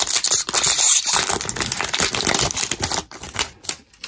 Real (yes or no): yes